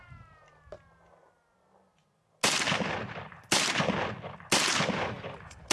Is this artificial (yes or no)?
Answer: no